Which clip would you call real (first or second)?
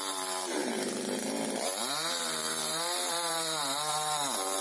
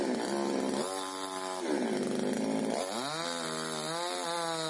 second